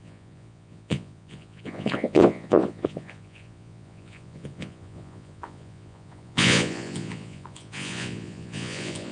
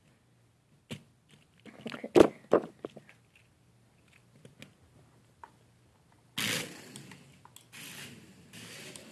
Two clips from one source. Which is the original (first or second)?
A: second